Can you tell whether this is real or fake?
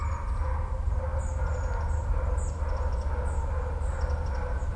real